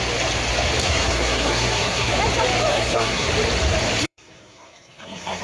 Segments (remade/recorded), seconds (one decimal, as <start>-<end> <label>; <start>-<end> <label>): 0.0-0.8 recorded; 0.8-2.2 remade; 2.2-2.7 recorded; 2.7-3.3 remade; 3.3-4.0 recorded; 4.0-5.4 remade